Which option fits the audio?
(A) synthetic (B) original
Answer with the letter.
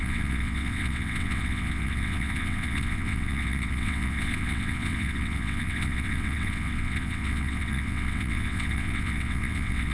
A